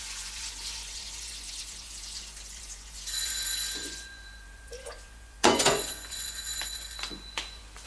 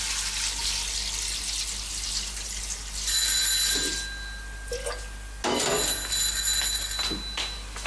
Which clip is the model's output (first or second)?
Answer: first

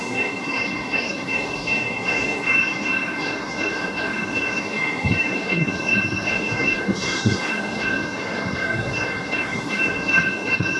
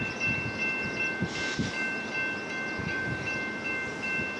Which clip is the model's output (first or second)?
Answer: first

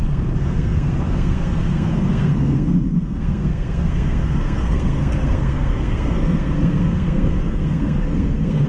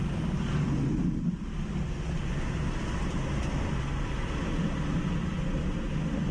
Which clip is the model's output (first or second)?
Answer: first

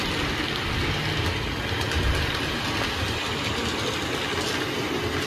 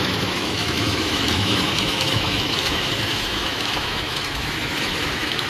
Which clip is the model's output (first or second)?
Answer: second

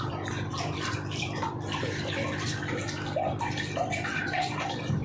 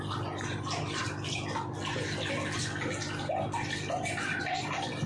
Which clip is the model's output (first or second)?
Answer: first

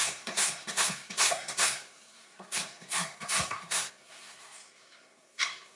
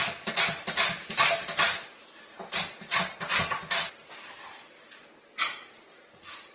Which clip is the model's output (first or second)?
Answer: first